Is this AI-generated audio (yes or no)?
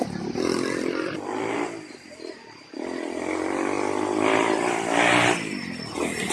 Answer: no